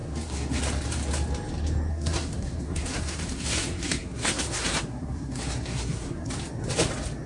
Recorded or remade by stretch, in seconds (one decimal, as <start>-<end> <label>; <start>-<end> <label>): 0.0-0.6 remade; 0.6-1.9 recorded; 1.9-6.3 remade; 6.3-7.3 recorded